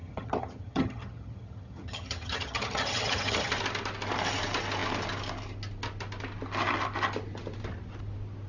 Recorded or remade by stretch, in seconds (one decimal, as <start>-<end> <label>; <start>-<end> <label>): 0.0-3.5 remade; 3.5-8.5 recorded